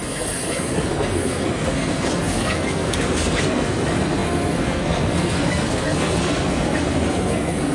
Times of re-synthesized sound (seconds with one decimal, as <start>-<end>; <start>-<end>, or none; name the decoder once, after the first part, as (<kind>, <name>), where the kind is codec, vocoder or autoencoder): 0.0-7.7 (codec, SNAC)